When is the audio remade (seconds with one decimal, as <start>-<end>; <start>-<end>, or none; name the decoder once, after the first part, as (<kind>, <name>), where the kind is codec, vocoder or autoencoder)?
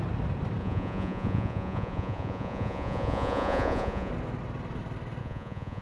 0.6-4.1 (vocoder, Vocos); 5.2-5.8